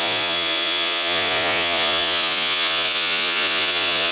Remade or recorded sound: remade